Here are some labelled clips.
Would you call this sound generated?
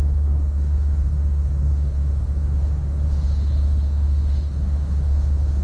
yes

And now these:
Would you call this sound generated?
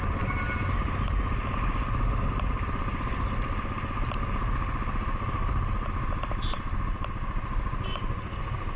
no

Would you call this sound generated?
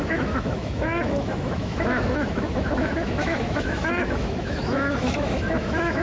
yes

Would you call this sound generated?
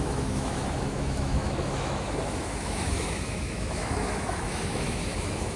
yes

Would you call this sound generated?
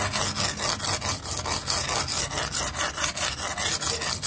no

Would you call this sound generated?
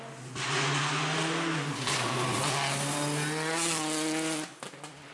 no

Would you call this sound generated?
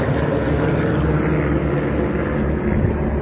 no